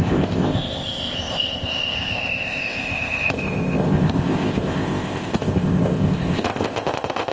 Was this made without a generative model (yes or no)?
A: no